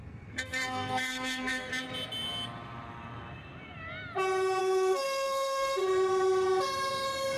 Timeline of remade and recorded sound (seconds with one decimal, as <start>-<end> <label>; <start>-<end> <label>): 0.0-1.7 remade; 1.7-4.6 recorded; 4.6-5.8 remade; 5.8-7.4 recorded